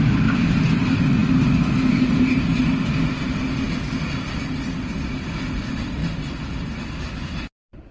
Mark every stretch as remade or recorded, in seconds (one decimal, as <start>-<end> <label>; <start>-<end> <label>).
0.0-7.9 recorded